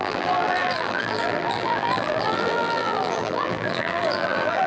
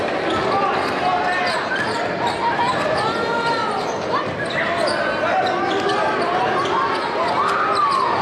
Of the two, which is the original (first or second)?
second